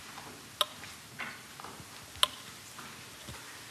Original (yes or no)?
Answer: yes